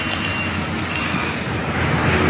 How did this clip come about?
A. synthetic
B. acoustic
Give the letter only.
B